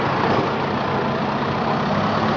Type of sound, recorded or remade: recorded